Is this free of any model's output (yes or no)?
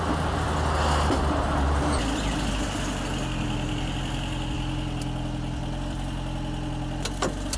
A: yes